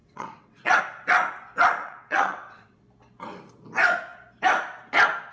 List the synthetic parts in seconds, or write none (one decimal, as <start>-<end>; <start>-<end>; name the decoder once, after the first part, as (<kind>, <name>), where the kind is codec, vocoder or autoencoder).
0.0-0.8 (vocoder, WaveNeXt); 1.8-2.8